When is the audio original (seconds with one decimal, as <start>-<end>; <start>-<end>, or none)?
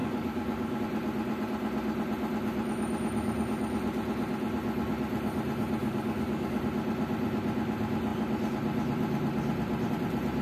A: 0.8-5.8; 6.6-10.4